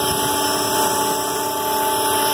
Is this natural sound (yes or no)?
yes